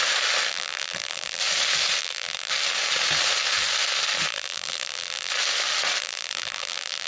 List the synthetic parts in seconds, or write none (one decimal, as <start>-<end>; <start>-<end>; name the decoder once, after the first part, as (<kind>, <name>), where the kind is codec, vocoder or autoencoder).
0.5-1.4 (vocoder, BigVGAN v2); 2.0-2.5; 4.3-5.3; 6.0-7.1